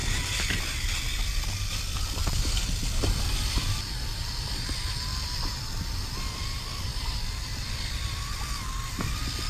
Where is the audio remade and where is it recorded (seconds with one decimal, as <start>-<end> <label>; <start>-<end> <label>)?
0.0-9.5 recorded